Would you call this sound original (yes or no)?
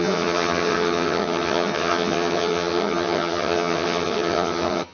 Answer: no